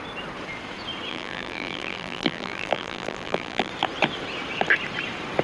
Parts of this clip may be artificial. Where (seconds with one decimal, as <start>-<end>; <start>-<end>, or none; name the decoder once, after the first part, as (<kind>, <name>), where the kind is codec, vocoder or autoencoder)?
1.1-3.7 (vocoder, BigVGAN v2)